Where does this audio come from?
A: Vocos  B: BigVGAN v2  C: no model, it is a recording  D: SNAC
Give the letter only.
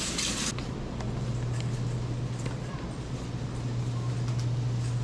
C